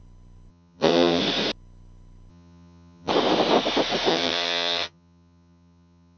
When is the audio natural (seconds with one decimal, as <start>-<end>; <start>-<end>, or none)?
0.0-0.5; 1.2-2.3; 3.1-4.1